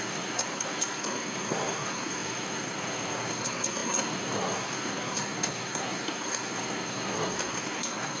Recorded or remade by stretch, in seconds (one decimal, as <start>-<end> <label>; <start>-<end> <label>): 0.0-8.2 remade

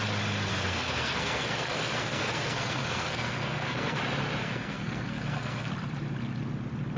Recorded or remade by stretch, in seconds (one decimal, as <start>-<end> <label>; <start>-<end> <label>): 0.0-0.5 recorded; 0.5-4.0 remade; 4.0-4.4 recorded; 4.4-5.7 remade; 5.7-7.0 recorded

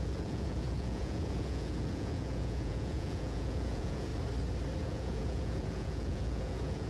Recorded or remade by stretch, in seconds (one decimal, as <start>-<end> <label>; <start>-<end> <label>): 0.0-4.1 remade; 4.1-4.8 recorded; 4.8-6.9 remade

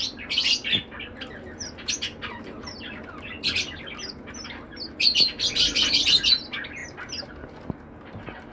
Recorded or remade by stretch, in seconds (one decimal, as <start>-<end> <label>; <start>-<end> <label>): 0.0-8.5 recorded

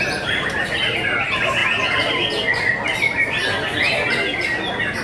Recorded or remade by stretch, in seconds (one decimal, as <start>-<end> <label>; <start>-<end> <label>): 0.0-5.0 recorded

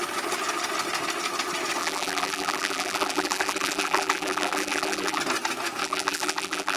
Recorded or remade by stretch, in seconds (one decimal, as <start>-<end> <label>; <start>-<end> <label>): 0.0-1.8 recorded; 1.8-5.2 remade; 5.2-5.8 recorded; 5.8-6.8 remade

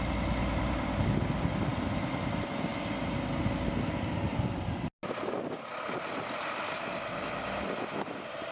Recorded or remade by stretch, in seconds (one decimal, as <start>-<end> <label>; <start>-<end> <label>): 0.0-8.5 recorded

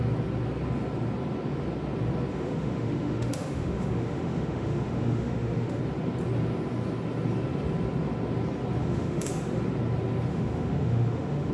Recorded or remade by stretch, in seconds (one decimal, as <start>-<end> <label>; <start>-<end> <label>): 0.0-2.3 recorded; 2.3-5.8 remade; 5.8-8.8 recorded; 8.8-9.3 remade; 9.3-10.3 recorded; 10.3-11.5 remade